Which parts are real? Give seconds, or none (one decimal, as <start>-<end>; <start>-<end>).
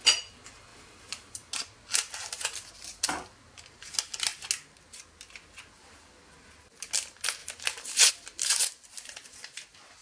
0.0-0.7; 1.5-7.4; 8.1-10.0